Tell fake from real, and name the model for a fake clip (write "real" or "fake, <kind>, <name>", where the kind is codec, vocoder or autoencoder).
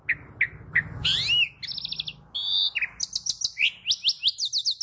real